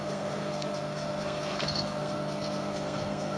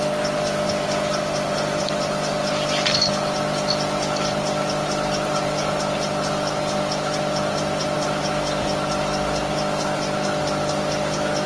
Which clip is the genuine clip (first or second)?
second